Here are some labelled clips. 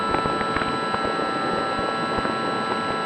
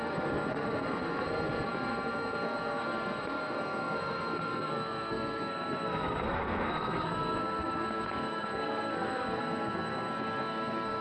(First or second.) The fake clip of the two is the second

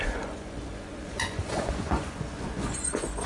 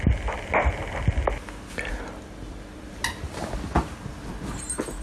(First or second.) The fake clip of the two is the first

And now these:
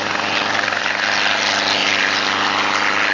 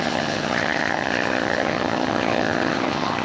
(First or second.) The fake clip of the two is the second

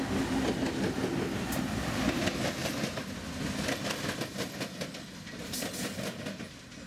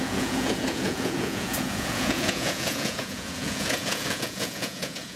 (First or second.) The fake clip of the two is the second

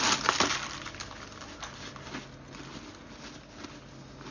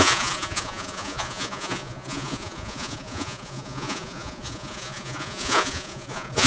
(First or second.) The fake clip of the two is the second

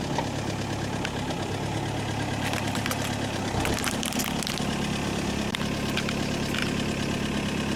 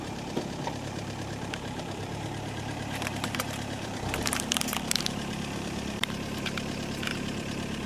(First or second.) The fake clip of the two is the second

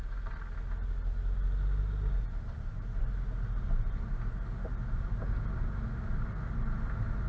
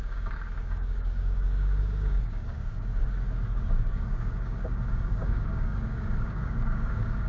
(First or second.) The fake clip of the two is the second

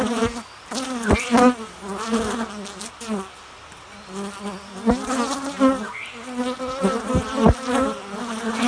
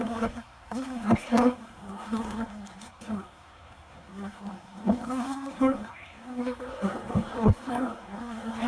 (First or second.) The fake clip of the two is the second